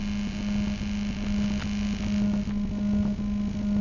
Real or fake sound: real